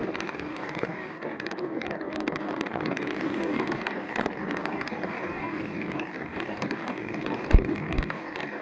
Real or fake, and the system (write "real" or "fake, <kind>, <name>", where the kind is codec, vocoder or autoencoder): fake, codec, DAC